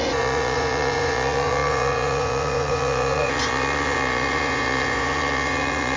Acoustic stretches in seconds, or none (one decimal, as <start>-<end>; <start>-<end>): none